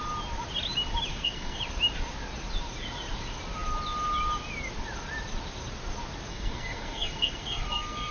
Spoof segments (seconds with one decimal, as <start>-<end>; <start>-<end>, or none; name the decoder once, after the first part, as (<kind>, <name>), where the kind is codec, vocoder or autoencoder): 1.1-1.6 (codec, SNAC); 6.3-8.1